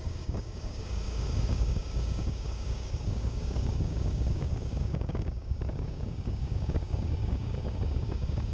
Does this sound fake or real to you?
fake